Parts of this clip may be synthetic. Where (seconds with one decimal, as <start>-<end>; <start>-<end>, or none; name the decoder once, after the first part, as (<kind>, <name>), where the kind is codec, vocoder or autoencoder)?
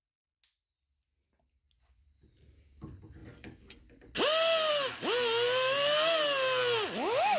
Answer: none